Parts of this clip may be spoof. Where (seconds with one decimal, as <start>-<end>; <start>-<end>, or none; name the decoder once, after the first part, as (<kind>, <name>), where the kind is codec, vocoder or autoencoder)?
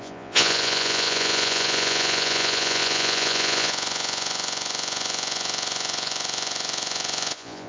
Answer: 0.0-7.7 (vocoder, Vocos)